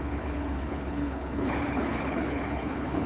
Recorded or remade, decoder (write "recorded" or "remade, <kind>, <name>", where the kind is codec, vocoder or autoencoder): remade, codec, HILCodec